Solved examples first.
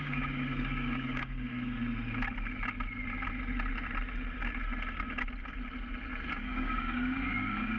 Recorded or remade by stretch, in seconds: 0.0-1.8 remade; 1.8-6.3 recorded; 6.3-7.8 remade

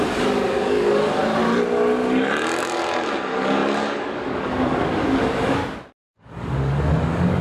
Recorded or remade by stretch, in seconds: 0.0-1.2 remade; 1.2-2.6 recorded; 2.6-5.6 remade; 5.6-6.1 recorded; 6.1-7.4 remade

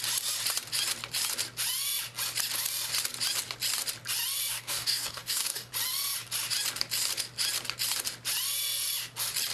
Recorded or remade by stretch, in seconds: 0.0-4.5 recorded; 4.5-5.7 remade; 5.7-9.5 recorded

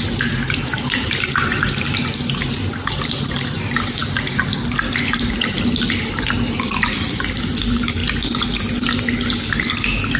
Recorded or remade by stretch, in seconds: 0.0-10.2 recorded